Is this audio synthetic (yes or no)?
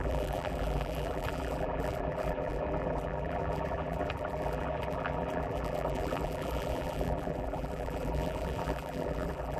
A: yes